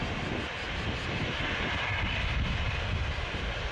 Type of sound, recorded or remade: recorded